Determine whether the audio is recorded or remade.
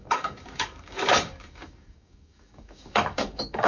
remade